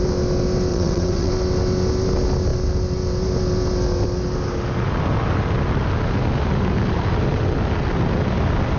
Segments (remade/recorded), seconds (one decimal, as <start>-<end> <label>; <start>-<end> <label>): 0.0-0.7 recorded; 0.7-1.3 remade; 1.3-8.8 recorded